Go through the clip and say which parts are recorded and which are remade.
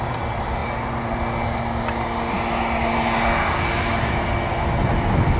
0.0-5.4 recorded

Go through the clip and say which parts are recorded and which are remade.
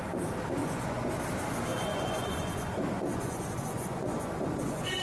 0.0-0.6 recorded; 0.6-1.1 remade; 1.1-1.7 recorded; 1.7-5.0 remade